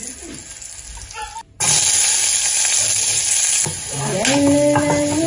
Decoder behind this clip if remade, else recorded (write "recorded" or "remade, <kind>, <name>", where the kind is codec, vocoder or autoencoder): recorded